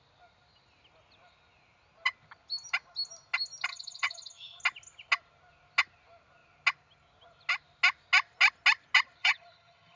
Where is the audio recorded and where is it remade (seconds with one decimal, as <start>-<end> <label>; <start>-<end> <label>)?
0.0-3.7 recorded; 3.7-4.6 remade; 4.6-9.2 recorded; 9.2-10.0 remade